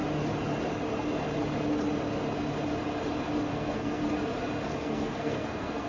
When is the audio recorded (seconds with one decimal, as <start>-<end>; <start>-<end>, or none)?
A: 0.0-3.5; 4.0-4.8